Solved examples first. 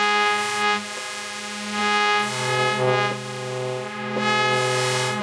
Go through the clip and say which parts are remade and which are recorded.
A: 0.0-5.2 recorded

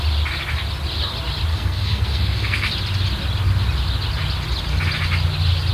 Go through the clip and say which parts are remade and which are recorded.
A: 0.0-1.5 recorded; 1.5-2.7 remade; 2.7-5.7 recorded

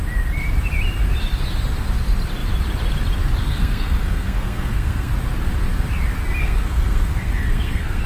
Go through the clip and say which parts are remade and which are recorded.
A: 0.0-3.4 recorded; 3.4-5.1 remade; 5.1-6.4 recorded; 6.4-8.1 remade